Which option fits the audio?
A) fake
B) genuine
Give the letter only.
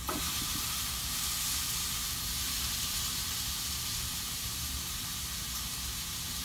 A